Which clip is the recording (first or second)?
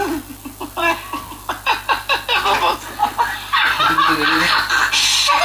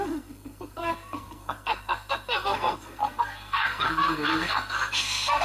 first